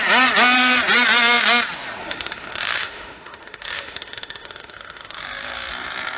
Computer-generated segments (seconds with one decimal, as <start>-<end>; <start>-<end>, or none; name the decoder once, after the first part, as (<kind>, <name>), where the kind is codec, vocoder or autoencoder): 2.0-5.7 (autoencoder, DAC-VAE)